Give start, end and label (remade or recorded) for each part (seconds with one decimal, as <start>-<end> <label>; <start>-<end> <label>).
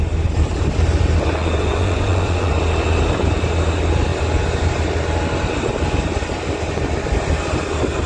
0.0-1.4 recorded; 1.4-2.5 remade; 2.5-8.1 recorded